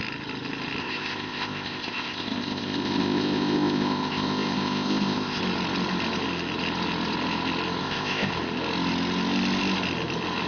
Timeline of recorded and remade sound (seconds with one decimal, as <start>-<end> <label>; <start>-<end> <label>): 0.0-0.8 recorded; 0.8-5.4 remade; 5.4-7.8 recorded; 7.8-8.3 remade; 8.3-10.5 recorded